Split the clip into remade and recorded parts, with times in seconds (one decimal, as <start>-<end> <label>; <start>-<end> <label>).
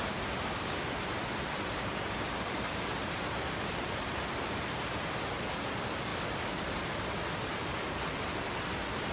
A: 0.0-9.1 recorded